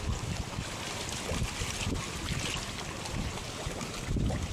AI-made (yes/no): no